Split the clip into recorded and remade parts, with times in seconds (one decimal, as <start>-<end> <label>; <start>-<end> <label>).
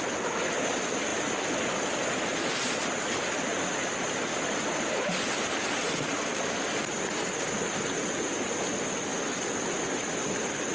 0.0-10.7 recorded